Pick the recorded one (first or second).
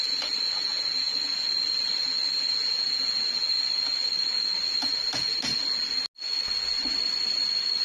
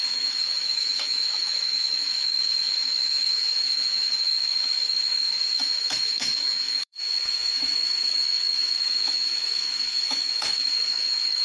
first